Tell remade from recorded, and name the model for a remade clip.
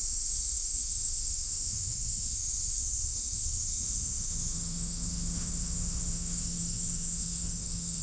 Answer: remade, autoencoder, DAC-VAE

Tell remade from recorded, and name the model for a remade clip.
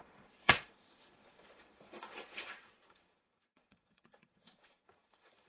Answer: remade, vocoder, Vocos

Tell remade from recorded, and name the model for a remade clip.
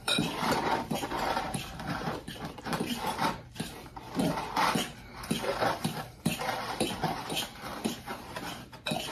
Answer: remade, vocoder, BigVGAN v2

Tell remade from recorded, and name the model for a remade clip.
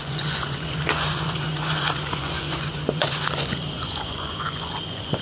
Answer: remade, vocoder, Vocos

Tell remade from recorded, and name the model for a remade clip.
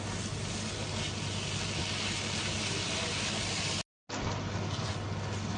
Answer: recorded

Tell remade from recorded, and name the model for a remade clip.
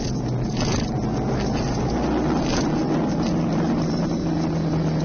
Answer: recorded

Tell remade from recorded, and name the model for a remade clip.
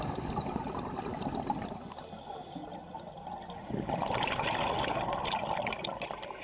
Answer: recorded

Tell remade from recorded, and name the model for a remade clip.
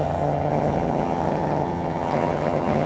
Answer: remade, vocoder, HiFi-GAN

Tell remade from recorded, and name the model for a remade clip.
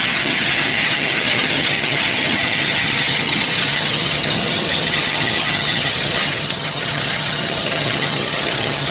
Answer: remade, vocoder, HiFi-GAN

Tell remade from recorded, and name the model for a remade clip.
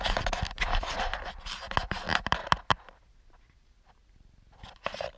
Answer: recorded